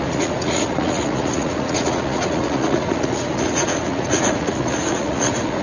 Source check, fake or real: fake